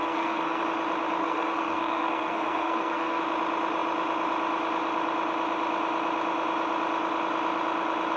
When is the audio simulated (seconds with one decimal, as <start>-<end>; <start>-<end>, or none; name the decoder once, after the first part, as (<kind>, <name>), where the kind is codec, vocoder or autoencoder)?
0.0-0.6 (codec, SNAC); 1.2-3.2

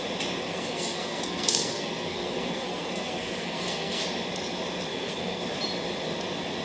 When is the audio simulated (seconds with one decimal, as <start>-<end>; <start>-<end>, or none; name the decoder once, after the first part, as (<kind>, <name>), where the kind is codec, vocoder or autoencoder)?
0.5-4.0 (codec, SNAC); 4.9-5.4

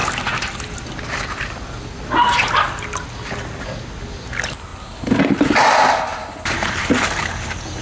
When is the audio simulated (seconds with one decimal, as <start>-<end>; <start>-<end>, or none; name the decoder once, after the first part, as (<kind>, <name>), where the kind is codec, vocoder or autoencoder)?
none